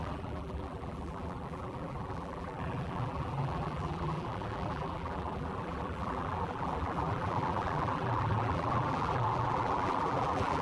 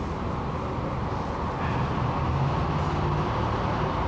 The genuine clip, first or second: second